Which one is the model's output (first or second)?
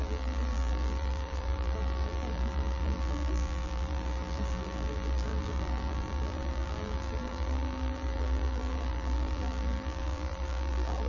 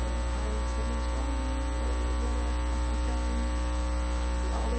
first